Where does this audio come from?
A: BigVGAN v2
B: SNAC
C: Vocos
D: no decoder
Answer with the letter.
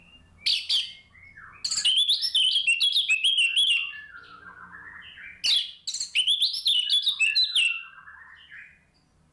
D